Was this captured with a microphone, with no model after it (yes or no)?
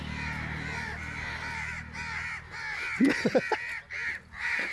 yes